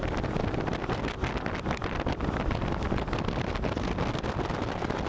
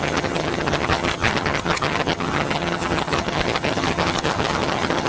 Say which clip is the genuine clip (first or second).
first